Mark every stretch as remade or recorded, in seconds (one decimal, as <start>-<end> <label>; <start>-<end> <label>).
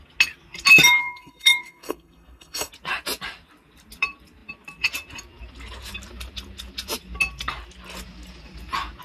0.0-1.0 recorded; 1.0-2.7 remade; 2.7-9.0 recorded